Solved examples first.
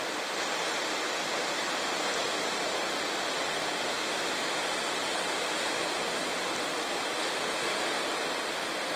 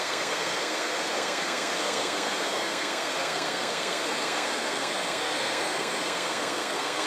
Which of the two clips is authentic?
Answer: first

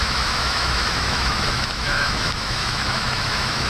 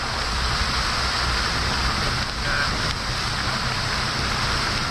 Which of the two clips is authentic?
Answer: second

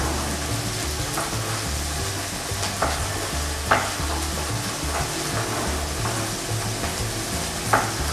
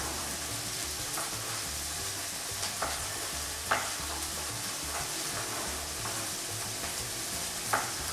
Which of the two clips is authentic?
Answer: first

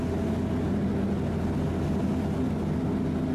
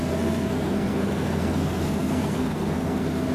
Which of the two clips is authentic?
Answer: first